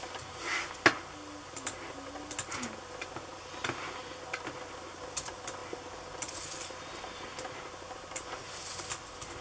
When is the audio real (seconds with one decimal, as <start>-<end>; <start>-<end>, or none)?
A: 0.0-9.4